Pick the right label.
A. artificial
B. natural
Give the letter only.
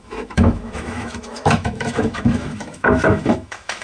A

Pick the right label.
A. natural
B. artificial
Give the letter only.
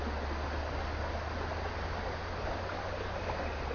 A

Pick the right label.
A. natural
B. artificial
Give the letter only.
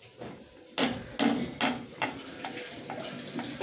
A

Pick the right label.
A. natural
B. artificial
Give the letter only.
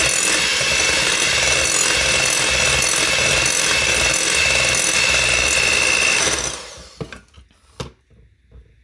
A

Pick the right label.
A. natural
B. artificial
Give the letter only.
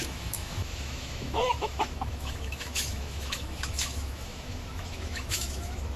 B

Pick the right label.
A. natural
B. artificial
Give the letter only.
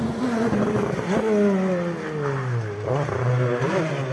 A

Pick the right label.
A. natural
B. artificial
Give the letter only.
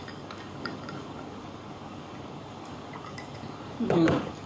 B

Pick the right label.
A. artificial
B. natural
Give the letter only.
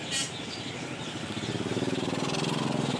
B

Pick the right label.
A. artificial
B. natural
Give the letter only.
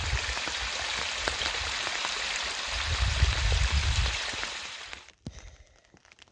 B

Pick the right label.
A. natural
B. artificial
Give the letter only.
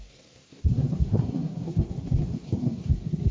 B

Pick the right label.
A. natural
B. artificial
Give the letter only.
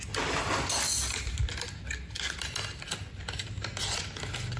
A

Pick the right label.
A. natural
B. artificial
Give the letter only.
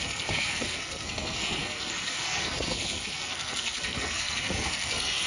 B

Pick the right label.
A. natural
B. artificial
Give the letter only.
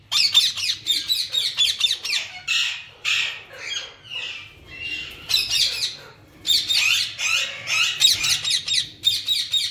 A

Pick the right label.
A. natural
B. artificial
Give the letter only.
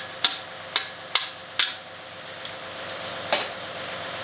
A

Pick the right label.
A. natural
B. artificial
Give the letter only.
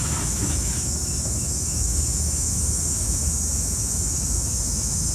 B